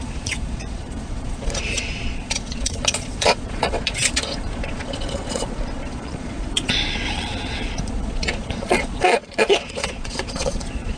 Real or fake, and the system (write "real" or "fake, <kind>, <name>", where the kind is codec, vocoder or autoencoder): fake, vocoder, Vocos